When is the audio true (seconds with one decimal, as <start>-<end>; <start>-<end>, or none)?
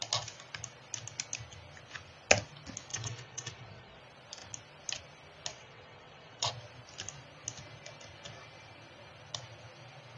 0.0-2.9; 4.0-5.5; 6.5-10.2